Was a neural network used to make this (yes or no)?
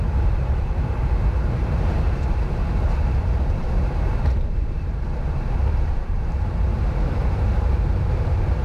yes